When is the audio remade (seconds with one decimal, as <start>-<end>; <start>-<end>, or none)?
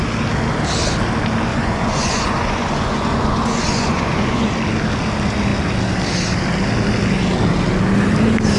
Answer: 1.5-4.5